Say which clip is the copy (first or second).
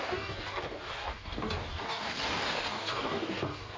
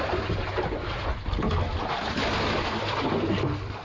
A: first